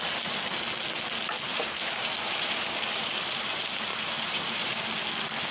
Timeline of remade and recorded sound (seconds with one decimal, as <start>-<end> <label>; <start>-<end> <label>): 0.0-1.5 recorded; 1.5-3.5 remade; 3.5-3.9 recorded; 3.9-4.8 remade; 4.8-5.5 recorded